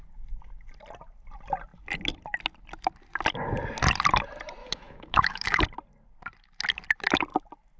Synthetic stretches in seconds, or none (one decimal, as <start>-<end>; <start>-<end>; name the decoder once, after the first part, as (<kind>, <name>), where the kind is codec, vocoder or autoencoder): 4.6-5.6 (autoencoder, DAC-VAE)